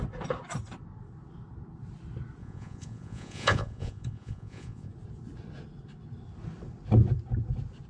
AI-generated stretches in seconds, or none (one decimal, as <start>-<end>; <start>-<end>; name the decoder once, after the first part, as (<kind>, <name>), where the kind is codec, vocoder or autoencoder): 2.4-4.9 (vocoder, Vocos)